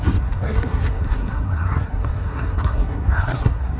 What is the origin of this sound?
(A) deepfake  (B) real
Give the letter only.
A